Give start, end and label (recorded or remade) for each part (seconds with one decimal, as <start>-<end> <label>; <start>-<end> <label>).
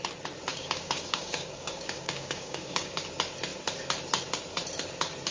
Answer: 0.0-0.5 recorded; 0.5-3.0 remade; 3.0-5.3 recorded